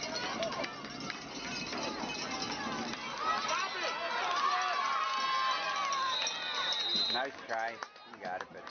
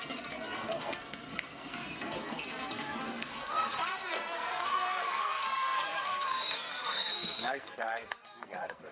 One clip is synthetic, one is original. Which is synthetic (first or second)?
second